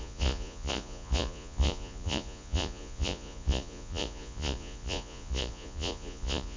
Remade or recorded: remade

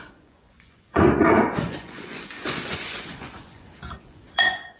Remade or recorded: remade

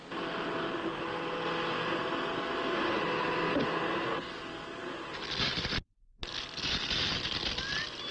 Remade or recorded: recorded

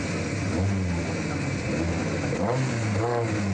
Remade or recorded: recorded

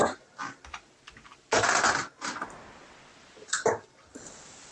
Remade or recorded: recorded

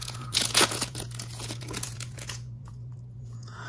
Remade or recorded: remade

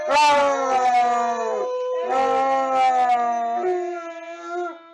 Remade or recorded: recorded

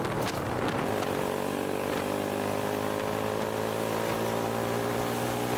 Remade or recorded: recorded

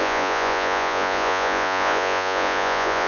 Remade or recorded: remade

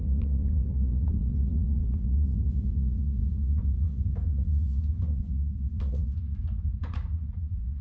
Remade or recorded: remade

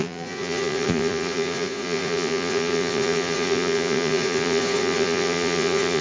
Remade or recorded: remade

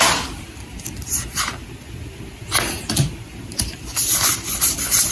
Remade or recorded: recorded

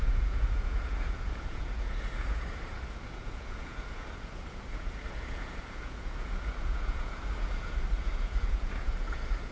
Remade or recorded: remade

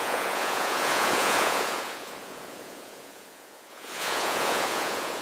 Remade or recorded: remade